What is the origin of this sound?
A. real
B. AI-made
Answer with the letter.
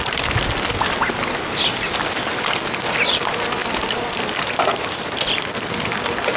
A